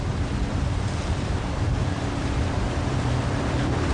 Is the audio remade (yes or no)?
yes